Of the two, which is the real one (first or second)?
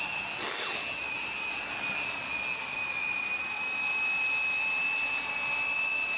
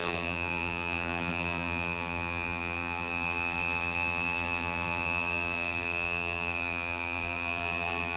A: first